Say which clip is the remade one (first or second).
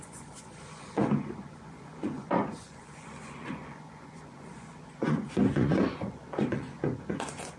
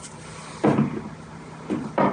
first